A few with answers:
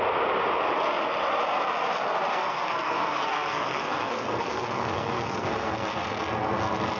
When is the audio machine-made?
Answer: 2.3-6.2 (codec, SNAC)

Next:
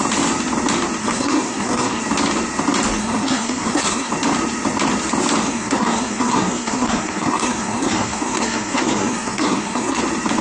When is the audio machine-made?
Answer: 1.0-2.0 (codec, SNAC); 3.0-4.1; 5.4-10.0